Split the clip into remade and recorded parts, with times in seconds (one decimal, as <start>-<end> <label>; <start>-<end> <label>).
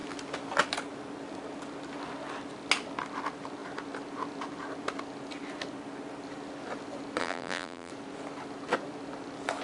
0.0-7.2 recorded; 7.2-7.9 remade; 7.9-9.6 recorded